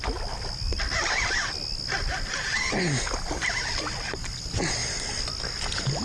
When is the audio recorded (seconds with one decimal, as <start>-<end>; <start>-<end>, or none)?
0.0-6.0